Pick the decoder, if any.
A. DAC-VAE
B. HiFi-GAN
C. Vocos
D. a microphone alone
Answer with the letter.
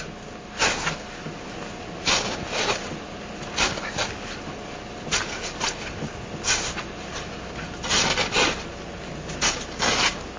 D